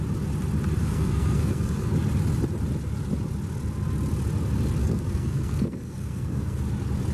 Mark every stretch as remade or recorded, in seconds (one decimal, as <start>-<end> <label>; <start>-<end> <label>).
0.0-0.8 recorded; 0.8-1.9 remade; 1.9-4.8 recorded; 4.8-6.6 remade; 6.6-7.1 recorded